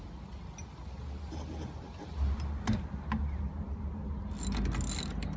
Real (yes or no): yes